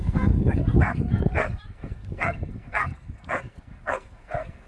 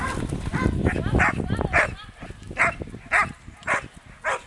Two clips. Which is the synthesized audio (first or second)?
first